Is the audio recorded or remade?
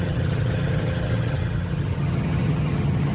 remade